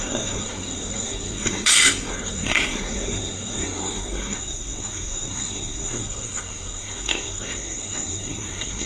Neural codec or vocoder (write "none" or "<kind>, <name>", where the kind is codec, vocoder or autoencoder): codec, SNAC